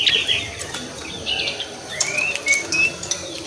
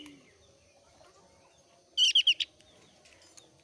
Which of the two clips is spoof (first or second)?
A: first